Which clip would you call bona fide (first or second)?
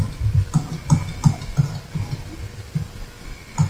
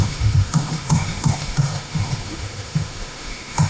first